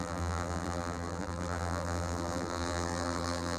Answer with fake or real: fake